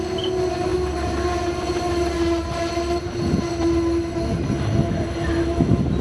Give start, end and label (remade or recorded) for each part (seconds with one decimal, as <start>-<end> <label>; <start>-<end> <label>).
0.0-6.0 recorded